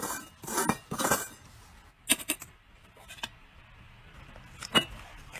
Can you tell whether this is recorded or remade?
recorded